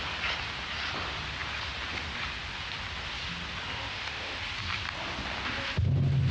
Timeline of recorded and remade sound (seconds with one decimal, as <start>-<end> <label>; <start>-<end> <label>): 0.0-3.9 recorded; 3.9-4.4 remade; 4.4-6.3 recorded